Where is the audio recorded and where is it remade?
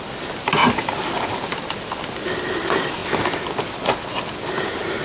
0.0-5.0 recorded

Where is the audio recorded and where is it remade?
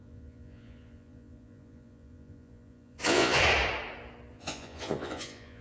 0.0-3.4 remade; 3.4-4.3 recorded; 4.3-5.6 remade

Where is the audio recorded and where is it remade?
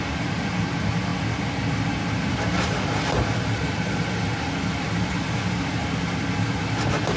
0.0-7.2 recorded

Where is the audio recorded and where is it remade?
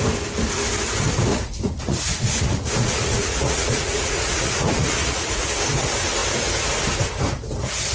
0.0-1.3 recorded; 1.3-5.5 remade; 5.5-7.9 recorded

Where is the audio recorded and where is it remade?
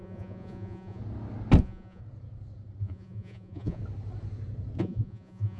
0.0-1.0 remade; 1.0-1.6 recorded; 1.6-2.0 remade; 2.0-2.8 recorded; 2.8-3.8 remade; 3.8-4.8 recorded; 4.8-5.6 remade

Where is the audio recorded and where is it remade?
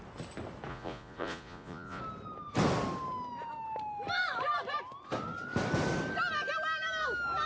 0.0-0.7 recorded; 0.7-2.0 remade; 2.0-7.5 recorded